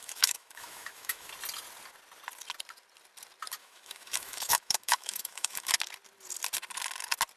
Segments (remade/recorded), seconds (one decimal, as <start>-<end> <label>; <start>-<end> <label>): 0.0-1.3 remade; 1.3-3.6 recorded; 3.6-5.7 remade; 5.7-7.4 recorded